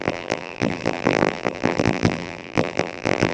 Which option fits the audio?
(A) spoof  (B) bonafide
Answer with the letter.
A